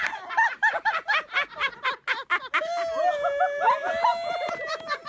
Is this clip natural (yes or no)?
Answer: yes